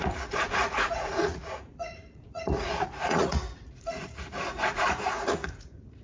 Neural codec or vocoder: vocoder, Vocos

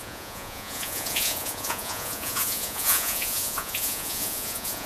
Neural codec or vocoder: vocoder, Vocos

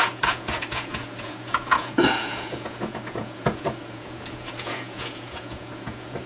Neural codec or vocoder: vocoder, Vocos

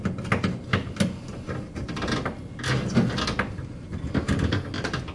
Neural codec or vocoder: none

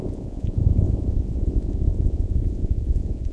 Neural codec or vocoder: vocoder, Vocos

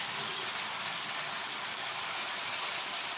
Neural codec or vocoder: none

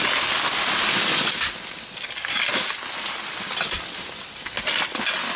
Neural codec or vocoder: none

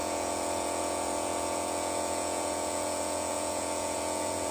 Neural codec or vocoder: vocoder, Vocos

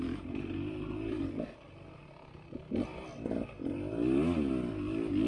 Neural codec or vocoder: none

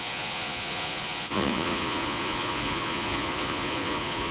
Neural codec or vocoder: vocoder, Vocos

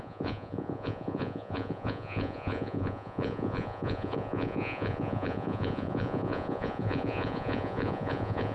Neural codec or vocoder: vocoder, Vocos